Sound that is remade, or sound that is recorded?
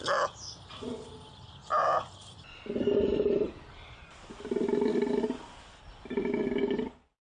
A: recorded